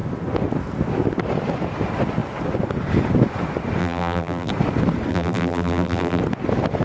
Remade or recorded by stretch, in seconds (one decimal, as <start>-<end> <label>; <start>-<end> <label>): 0.0-3.8 recorded; 3.8-4.5 remade; 4.5-5.1 recorded; 5.1-6.2 remade; 6.2-6.8 recorded